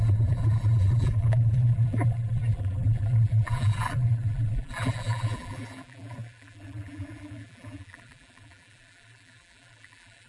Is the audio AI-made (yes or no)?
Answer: yes